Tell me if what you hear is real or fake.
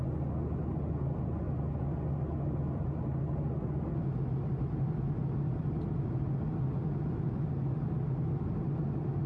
real